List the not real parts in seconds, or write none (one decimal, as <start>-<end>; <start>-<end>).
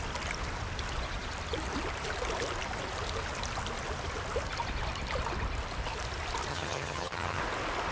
6.5-7.4